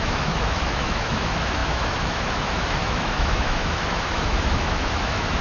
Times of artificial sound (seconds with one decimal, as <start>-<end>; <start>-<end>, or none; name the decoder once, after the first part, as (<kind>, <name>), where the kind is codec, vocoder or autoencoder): 0.0-5.4 (autoencoder, DAC-VAE)